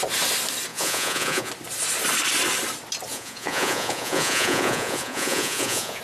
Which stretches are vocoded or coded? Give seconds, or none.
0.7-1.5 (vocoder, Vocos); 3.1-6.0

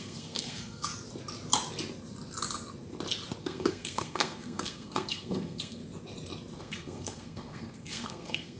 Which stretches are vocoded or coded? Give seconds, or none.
0.0-0.9 (codec, SNAC); 3.4-5.8; 6.6-8.6

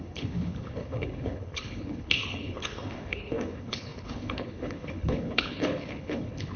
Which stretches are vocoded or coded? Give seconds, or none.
0.0-6.6 (codec, HILCodec)

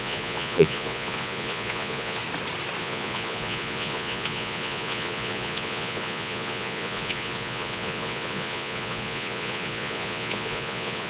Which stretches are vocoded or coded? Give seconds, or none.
0.0-2.2 (vocoder, Vocos); 2.8-11.1

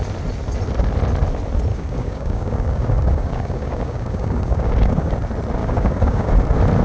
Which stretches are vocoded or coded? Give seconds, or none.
1.7-5.1 (codec, DAC); 5.6-6.3

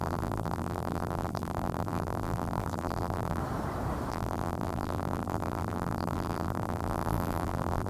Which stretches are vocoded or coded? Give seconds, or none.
0.0-3.4 (vocoder, BigVGAN v2); 4.1-7.9

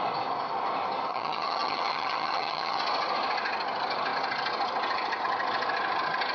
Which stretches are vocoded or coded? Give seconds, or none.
1.1-2.8 (vocoder, HiFi-GAN)